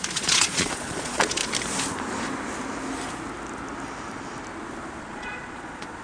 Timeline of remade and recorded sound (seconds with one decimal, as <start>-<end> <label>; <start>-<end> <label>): 0.0-1.4 remade; 1.4-5.0 recorded; 5.0-6.0 remade

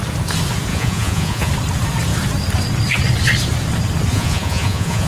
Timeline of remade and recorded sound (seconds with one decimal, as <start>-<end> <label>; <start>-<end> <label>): 0.0-0.7 recorded; 0.7-1.5 remade; 1.5-4.1 recorded; 4.1-5.1 remade